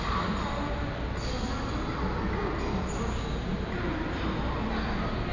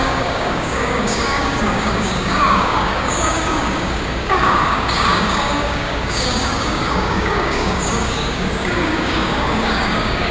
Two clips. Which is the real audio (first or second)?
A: first